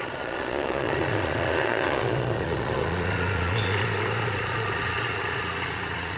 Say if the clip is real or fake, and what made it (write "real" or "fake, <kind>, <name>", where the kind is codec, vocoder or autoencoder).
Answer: fake, vocoder, Vocos